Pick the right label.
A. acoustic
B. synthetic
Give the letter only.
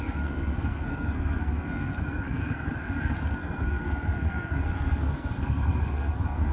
B